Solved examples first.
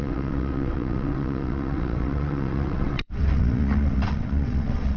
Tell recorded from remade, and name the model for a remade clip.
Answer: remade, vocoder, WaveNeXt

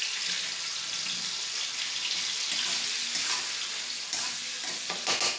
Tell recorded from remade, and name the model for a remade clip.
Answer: recorded